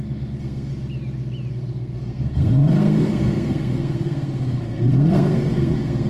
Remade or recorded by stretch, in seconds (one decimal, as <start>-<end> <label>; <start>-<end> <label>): 0.0-0.7 remade; 0.7-1.5 recorded; 1.5-6.1 remade